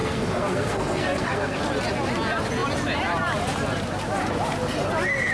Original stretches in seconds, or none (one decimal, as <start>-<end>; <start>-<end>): 1.6-5.3

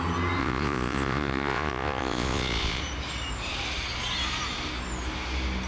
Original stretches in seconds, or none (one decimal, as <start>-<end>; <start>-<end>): 0.0-0.4; 2.8-5.7

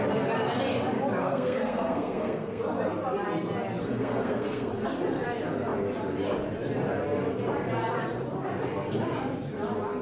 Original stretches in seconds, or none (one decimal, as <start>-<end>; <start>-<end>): 0.0-1.2; 2.6-3.8; 4.7-10.0

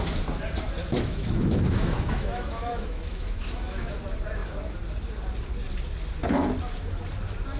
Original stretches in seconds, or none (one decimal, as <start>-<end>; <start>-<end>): 0.0-0.8; 4.0-7.6

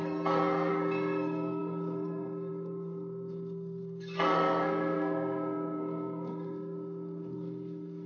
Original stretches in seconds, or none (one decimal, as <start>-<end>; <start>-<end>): none